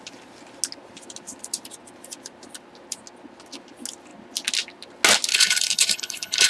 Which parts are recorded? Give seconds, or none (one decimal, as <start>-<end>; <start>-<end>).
0.0-5.3